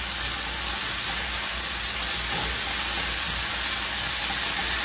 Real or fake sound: real